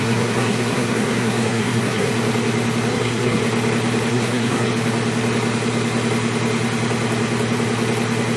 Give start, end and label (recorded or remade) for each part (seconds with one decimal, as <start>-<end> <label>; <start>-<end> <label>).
0.0-2.1 remade; 2.1-2.9 recorded; 2.9-3.4 remade; 3.4-4.1 recorded; 4.1-4.7 remade; 4.7-8.4 recorded